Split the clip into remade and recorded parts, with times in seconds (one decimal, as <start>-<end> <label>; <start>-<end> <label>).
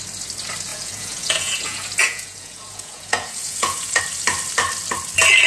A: 0.0-0.7 recorded; 0.7-4.0 remade; 4.0-5.5 recorded